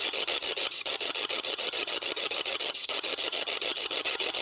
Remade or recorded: remade